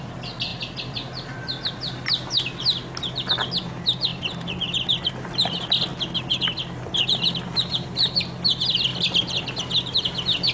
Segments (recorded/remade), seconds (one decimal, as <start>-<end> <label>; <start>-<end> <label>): 0.0-10.5 recorded